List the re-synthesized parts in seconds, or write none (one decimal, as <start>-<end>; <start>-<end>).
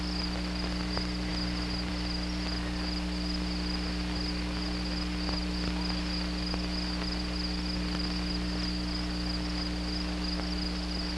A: none